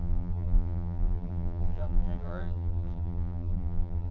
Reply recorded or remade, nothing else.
remade